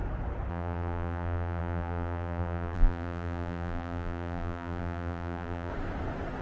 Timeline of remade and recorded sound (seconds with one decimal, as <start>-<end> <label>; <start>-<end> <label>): 0.0-0.5 recorded; 0.5-5.7 remade; 5.7-6.4 recorded